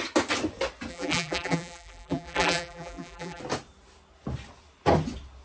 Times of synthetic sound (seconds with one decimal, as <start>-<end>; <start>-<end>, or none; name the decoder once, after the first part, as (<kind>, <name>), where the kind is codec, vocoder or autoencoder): 0.9-3.4 (vocoder, BigVGAN v2)